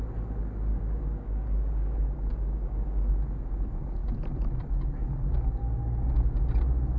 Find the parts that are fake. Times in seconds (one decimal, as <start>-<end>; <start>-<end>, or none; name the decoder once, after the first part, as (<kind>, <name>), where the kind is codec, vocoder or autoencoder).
0.7-3.1 (codec, DAC); 5.6-6.1